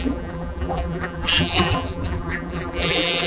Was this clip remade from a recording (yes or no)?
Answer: yes